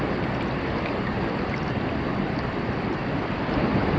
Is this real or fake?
real